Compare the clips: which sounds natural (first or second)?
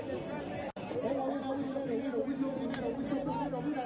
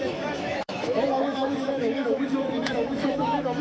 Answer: first